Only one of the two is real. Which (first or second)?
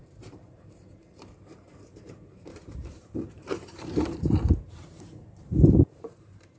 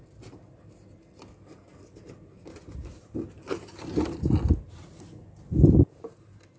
second